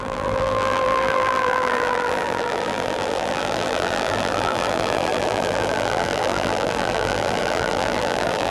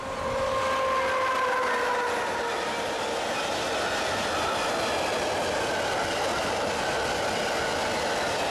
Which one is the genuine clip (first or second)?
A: second